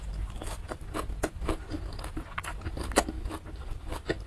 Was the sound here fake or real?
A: real